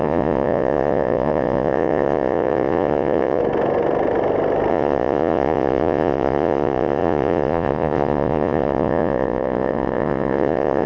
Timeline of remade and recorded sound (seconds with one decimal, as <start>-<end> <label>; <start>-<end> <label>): 0.0-3.4 remade; 3.4-4.7 recorded; 4.7-10.9 remade